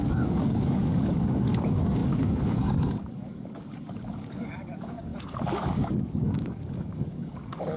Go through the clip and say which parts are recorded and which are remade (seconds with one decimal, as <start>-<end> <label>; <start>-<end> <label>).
0.0-7.8 remade